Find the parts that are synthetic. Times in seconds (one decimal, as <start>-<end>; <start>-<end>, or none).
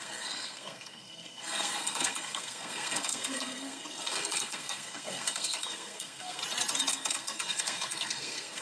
0.0-6.4; 6.9-8.6